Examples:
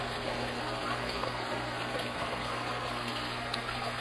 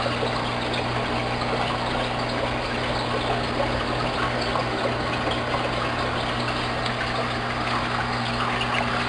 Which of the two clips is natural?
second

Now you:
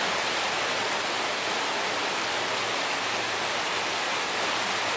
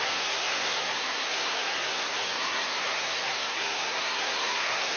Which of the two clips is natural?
first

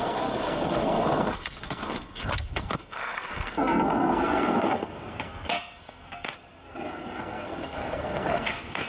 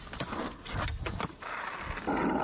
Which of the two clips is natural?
second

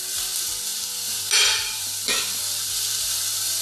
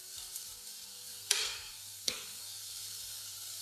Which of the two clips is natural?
first